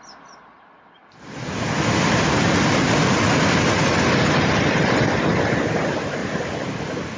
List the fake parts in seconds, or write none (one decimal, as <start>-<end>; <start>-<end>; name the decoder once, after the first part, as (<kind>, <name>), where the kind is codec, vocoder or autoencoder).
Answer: 6.2-6.8 (vocoder, BigVGAN v2)